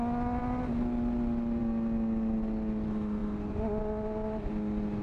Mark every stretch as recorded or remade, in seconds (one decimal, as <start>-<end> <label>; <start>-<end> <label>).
0.0-5.0 recorded